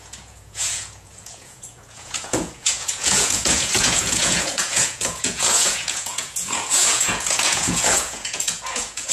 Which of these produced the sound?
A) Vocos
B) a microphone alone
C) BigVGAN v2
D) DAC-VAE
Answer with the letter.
A